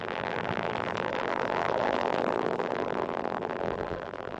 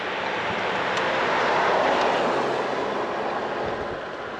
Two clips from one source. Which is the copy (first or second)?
first